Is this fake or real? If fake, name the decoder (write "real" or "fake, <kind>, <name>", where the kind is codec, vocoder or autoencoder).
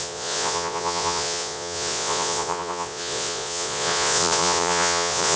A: fake, vocoder, Vocos